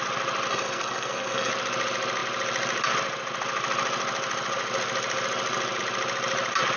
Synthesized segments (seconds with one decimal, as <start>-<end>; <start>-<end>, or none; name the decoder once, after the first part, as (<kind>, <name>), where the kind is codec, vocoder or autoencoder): 0.5-1.5 (codec, SNAC)